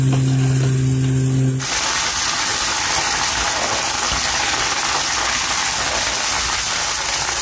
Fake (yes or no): no